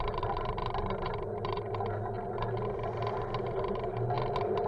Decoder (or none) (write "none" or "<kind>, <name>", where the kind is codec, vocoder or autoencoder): none